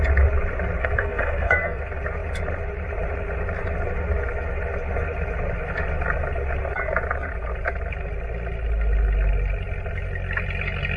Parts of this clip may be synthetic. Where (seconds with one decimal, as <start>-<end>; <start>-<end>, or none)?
0.8-1.8